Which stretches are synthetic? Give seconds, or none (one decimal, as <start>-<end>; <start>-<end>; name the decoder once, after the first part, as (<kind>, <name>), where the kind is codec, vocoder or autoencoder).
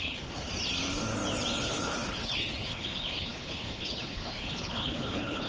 0.0-0.5 (codec, HILCodec); 1.6-5.5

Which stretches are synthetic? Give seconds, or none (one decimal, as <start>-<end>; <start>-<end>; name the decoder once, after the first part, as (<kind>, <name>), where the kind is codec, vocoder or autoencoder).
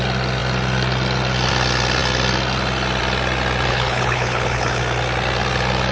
3.7-4.8 (codec, HILCodec)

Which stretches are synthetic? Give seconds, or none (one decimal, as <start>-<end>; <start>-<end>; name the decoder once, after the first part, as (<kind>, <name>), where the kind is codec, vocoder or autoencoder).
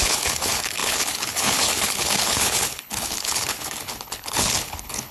0.0-5.1 (codec, HILCodec)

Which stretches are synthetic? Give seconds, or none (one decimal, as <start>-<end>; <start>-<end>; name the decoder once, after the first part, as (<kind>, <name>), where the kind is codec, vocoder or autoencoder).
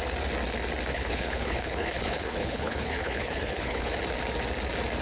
0.9-3.9 (codec, HILCodec)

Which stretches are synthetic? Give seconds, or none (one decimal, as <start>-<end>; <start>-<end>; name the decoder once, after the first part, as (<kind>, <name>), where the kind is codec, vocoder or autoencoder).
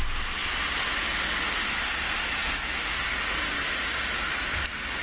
none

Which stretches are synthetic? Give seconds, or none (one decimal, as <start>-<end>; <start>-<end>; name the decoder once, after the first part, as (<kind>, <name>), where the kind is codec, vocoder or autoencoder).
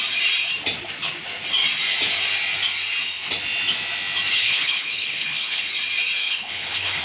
4.3-5.7 (codec, HILCodec); 6.2-7.0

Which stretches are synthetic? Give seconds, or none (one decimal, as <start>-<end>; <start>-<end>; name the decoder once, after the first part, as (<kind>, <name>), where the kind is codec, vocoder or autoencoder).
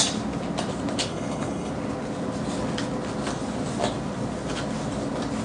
1.1-1.7 (codec, HILCodec)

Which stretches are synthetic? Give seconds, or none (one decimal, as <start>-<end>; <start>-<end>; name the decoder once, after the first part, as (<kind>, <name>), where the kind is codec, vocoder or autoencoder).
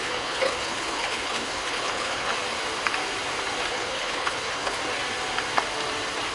0.0-2.3 (codec, HILCodec); 3.7-4.8